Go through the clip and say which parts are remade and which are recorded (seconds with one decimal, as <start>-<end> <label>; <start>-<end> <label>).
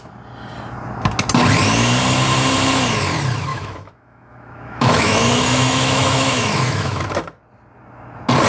0.0-3.5 recorded; 3.5-7.0 remade; 7.0-8.5 recorded